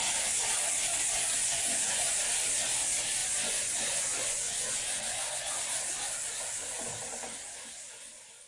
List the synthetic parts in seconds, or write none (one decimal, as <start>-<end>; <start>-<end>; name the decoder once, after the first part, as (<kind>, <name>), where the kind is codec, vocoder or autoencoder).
1.4-2.2 (vocoder, Vocos); 3.2-5.6